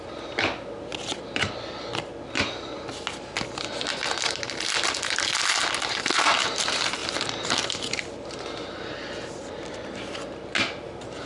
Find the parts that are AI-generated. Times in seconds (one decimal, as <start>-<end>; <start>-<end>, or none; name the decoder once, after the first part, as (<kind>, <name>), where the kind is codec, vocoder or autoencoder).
0.9-1.5 (vocoder, BigVGAN v2)

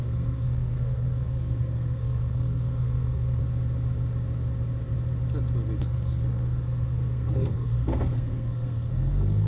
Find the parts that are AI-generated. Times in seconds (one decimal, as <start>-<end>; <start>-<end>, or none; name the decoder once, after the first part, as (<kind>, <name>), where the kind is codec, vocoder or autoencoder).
0.0-3.4 (codec, SNAC); 5.8-9.5

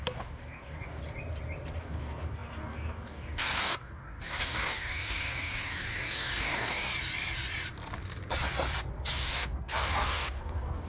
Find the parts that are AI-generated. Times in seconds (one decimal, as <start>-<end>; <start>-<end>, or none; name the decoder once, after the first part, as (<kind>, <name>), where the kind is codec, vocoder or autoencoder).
0.0-1.0 (codec, DAC); 1.8-6.9; 9.1-10.9

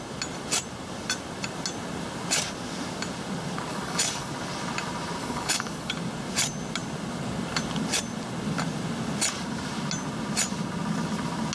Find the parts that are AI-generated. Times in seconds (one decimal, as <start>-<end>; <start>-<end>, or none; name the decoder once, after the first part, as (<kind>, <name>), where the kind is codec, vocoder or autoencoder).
3.7-4.3 (codec, DAC); 5.2-5.9

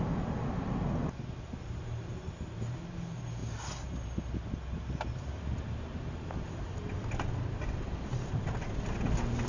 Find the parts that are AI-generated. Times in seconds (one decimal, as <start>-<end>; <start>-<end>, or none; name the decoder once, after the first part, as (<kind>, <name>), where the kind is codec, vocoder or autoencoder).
none

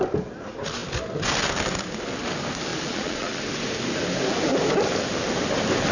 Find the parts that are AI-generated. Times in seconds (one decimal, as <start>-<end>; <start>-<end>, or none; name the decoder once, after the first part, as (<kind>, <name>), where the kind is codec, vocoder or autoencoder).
2.7-3.4 (vocoder, Vocos)

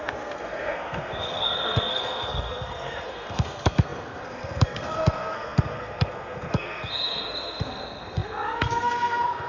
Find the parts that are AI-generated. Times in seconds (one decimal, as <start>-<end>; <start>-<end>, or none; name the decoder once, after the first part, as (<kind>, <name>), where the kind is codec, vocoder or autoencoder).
0.0-9.5 (codec, SNAC)